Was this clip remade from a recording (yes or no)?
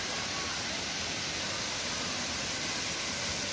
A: no